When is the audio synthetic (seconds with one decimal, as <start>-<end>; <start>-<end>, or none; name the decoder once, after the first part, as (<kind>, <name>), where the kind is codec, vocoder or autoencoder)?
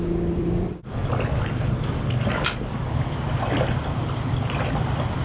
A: 0.0-1.0 (vocoder, BigVGAN v2); 2.8-5.2